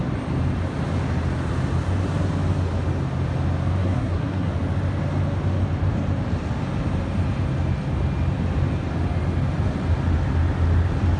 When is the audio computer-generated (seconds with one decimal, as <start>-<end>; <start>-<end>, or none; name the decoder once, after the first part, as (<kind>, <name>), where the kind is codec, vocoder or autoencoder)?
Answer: 3.8-4.5 (codec, SNAC)